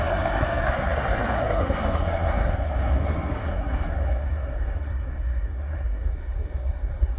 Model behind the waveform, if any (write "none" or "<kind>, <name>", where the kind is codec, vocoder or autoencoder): codec, SNAC